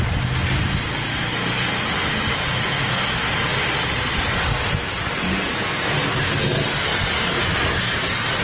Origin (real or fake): real